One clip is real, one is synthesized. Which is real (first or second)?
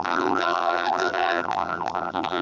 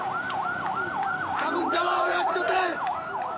second